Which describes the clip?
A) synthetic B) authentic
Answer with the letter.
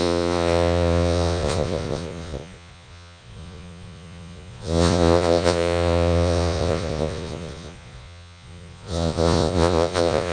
A